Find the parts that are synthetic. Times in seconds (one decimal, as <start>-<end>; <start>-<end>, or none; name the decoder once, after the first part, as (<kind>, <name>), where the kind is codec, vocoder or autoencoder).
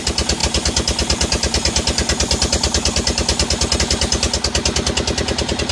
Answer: none